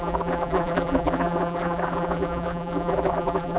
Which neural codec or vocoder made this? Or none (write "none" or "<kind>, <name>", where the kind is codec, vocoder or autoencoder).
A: vocoder, BigVGAN v2